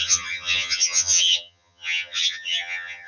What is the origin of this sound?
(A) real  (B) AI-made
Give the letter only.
B